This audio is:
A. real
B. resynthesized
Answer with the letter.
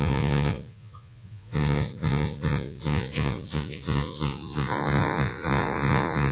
B